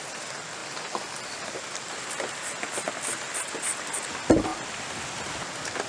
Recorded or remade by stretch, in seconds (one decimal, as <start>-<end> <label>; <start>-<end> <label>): 0.0-5.9 recorded